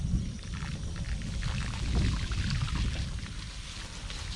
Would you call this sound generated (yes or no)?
no